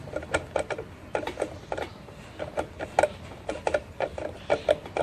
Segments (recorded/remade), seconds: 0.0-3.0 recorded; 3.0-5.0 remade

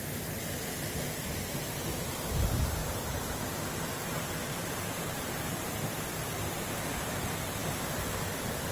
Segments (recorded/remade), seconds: 0.0-2.8 recorded; 2.8-3.4 remade; 3.4-3.9 recorded; 3.9-5.3 remade; 5.3-6.2 recorded; 6.2-6.7 remade; 6.7-8.7 recorded